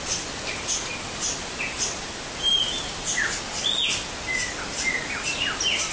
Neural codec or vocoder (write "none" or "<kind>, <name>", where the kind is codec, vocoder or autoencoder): none